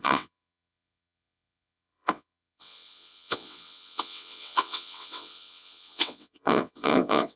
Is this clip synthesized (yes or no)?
yes